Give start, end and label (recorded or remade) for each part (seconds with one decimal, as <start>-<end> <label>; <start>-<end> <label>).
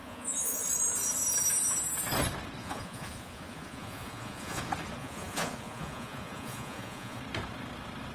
0.0-0.6 remade; 0.6-2.6 recorded; 2.6-4.6 remade; 4.6-5.0 recorded; 5.0-7.2 remade; 7.2-8.1 recorded